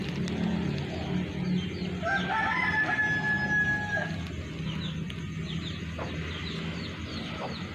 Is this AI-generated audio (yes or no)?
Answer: no